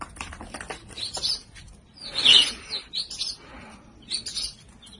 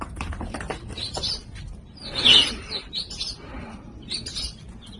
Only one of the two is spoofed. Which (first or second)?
second